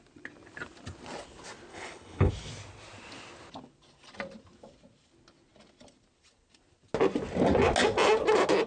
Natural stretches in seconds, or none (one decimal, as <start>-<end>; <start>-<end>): 0.0-1.7; 2.3-8.7